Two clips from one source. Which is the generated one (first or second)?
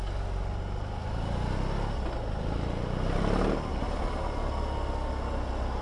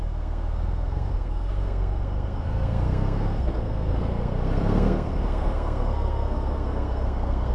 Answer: second